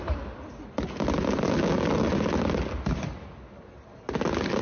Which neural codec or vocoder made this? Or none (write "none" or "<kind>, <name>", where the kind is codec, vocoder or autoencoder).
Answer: none